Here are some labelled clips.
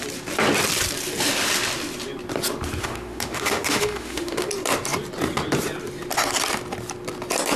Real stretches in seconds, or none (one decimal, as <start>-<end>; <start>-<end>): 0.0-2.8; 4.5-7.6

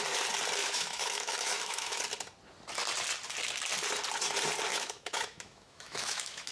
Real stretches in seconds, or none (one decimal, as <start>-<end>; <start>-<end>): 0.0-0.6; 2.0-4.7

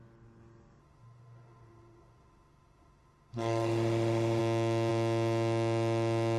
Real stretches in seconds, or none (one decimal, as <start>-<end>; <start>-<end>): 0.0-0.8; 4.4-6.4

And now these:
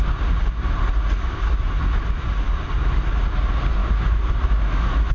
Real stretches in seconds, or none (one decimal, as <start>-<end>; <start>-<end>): 0.0-3.8

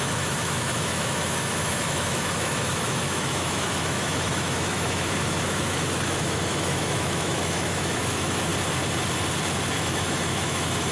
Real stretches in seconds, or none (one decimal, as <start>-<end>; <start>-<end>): 8.5-9.7

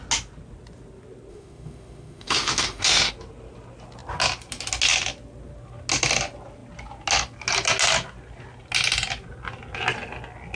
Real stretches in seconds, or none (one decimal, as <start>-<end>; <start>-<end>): 0.0-1.3; 3.1-10.6